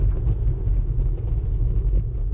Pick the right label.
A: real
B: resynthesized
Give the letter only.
A